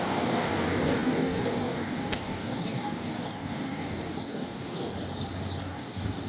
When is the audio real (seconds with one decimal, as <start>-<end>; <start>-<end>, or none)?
4.9-5.6